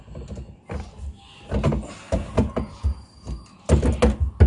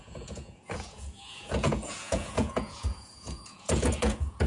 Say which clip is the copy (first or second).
second